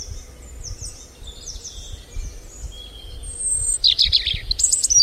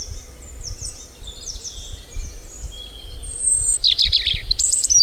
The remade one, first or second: second